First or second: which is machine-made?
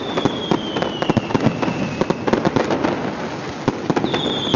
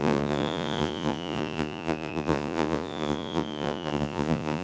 second